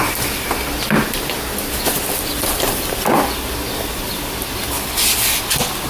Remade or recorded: recorded